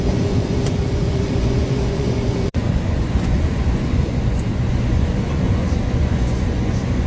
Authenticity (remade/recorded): remade